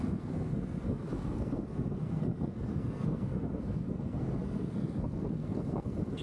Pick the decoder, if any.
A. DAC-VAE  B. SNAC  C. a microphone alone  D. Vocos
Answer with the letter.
B